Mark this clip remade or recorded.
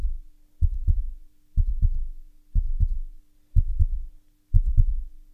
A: recorded